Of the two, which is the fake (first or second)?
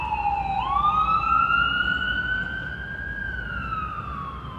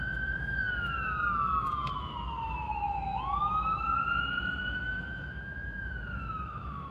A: second